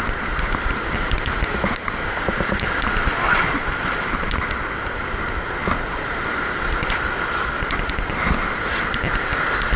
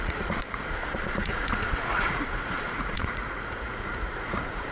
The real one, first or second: first